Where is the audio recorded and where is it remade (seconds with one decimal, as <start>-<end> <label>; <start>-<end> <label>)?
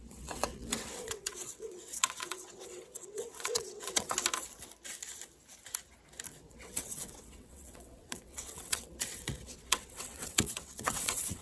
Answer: 0.0-4.1 remade; 4.1-6.3 recorded; 6.3-11.4 remade